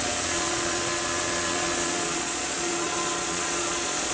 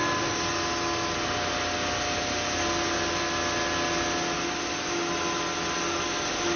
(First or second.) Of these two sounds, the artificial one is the first